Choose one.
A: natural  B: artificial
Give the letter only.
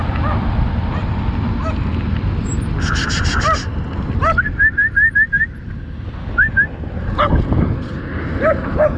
A